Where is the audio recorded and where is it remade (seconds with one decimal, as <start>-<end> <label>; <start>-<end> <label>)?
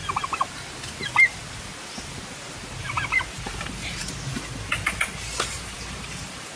0.0-2.8 recorded; 2.8-4.0 remade; 4.0-5.5 recorded; 5.5-6.6 remade